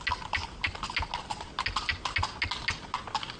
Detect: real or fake real